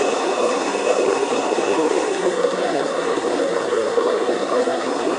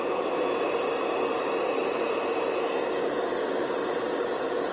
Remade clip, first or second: first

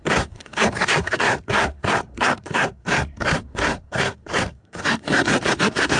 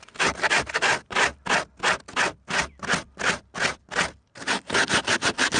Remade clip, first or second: first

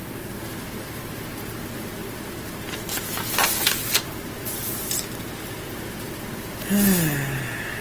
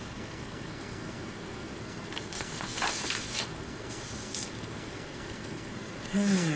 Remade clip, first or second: second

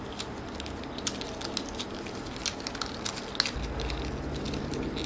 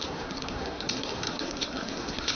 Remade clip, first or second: second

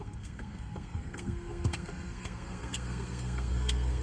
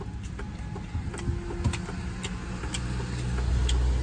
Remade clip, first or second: first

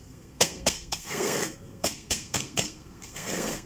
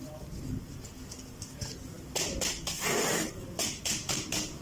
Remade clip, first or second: first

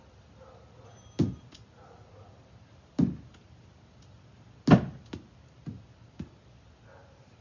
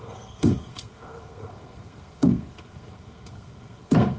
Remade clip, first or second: second